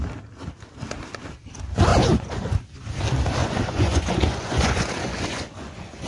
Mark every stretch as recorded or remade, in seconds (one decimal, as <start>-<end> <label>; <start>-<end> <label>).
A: 0.0-1.9 recorded; 1.9-2.6 remade; 2.6-3.4 recorded; 3.4-6.1 remade